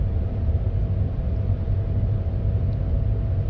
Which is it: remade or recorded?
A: recorded